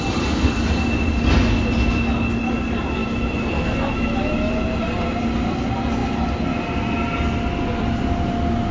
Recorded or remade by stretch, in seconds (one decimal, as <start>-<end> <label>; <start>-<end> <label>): 0.0-3.0 recorded; 3.0-4.5 remade; 4.5-8.7 recorded